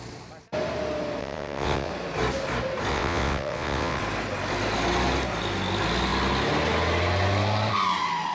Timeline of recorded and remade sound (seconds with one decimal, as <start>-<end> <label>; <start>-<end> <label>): 0.0-1.2 recorded; 1.2-1.9 remade; 1.9-2.9 recorded; 2.9-4.0 remade; 4.0-8.3 recorded